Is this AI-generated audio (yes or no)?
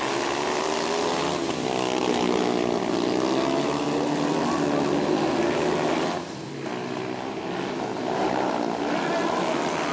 no